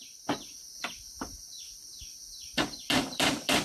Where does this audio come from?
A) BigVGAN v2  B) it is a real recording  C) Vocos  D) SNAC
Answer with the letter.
A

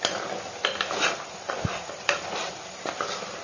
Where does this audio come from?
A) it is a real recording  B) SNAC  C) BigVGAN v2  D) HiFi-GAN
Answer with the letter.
C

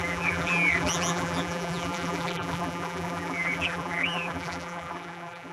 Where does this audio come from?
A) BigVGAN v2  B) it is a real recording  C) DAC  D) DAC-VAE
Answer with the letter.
A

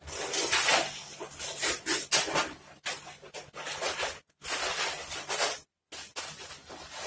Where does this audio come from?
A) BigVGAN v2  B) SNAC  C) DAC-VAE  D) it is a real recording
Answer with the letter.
D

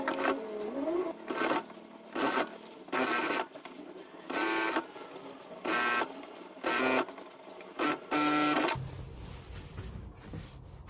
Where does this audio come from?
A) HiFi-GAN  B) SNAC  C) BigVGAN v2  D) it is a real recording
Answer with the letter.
D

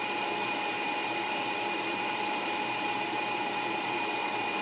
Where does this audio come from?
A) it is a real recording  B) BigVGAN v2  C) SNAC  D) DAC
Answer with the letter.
B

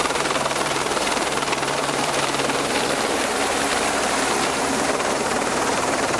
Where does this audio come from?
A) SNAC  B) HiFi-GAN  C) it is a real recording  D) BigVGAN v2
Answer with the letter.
D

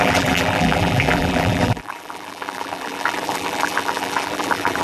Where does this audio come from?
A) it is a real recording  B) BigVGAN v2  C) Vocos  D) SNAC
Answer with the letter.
B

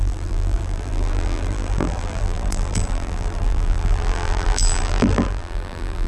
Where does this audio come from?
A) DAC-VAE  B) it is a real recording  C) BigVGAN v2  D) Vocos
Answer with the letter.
C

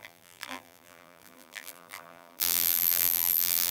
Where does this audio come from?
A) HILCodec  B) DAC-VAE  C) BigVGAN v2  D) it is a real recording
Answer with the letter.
C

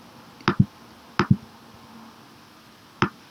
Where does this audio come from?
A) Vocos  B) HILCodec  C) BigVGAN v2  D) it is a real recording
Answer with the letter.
D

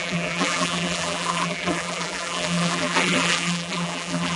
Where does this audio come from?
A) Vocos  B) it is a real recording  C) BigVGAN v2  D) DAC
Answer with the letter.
C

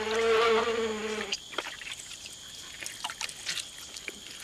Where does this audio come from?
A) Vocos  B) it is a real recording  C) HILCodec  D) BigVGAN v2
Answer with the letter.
B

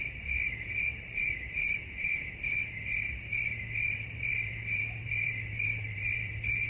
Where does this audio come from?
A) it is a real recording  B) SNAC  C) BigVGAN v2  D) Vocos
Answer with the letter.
C